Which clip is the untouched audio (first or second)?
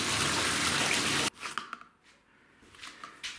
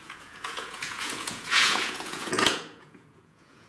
first